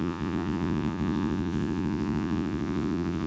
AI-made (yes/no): yes